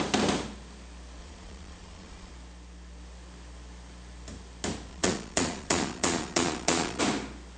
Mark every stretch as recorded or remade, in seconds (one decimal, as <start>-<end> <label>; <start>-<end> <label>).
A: 0.0-1.2 recorded; 1.2-2.3 remade; 2.3-4.9 recorded; 4.9-7.0 remade; 7.0-7.6 recorded